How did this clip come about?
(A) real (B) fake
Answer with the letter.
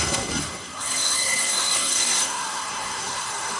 B